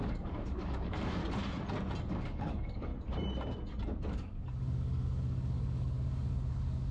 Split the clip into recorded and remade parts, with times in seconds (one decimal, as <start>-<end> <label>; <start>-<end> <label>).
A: 0.0-1.2 remade; 1.2-2.1 recorded; 2.1-2.9 remade; 2.9-4.1 recorded; 4.1-6.9 remade